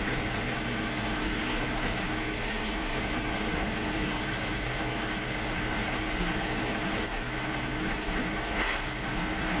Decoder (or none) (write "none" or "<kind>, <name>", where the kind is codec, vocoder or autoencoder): codec, SNAC